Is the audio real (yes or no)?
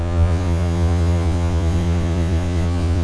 no